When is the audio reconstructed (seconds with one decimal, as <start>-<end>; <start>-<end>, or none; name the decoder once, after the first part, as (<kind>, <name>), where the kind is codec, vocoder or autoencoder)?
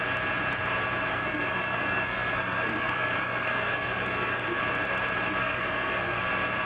1.1-4.6 (codec, SNAC); 5.4-6.2